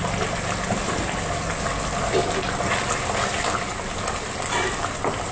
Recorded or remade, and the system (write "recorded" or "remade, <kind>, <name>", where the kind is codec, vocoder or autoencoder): recorded